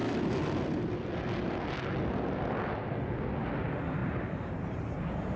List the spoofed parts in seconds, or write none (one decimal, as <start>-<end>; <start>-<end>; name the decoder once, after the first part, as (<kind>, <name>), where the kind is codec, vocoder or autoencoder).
4.0-5.4 (vocoder, BigVGAN v2)